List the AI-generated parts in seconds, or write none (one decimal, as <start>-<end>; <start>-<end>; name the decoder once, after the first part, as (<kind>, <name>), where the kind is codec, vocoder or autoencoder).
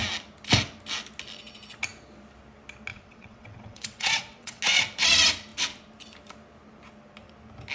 2.9-4.6 (vocoder, WaveNeXt)